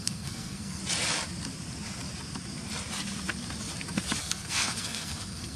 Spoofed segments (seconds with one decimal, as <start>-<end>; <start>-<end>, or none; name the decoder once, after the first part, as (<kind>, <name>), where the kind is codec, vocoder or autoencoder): 0.0-0.8 (codec, SNAC); 4.2-5.6